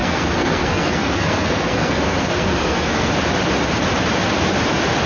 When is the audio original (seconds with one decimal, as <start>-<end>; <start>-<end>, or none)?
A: 3.1-5.1